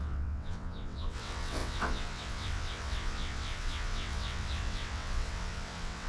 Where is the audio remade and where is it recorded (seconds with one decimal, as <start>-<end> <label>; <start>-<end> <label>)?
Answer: 0.0-6.1 remade